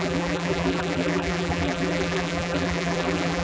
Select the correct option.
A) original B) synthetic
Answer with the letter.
B